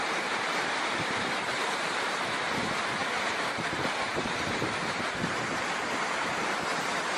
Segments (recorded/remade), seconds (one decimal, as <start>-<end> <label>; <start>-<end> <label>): 0.0-7.2 remade